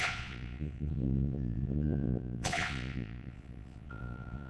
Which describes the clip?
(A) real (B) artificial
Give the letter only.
B